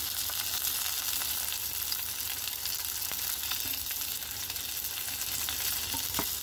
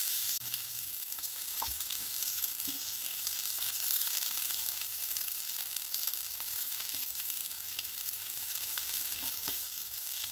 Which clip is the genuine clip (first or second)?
first